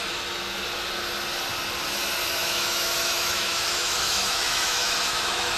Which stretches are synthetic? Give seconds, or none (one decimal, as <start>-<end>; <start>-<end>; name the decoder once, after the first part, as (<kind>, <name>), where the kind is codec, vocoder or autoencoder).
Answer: 2.4-5.6 (autoencoder, DAC-VAE)